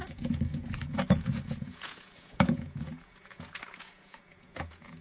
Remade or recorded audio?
remade